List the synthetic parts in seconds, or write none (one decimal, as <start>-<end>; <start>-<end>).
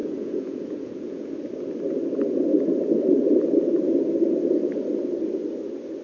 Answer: 0.0-1.3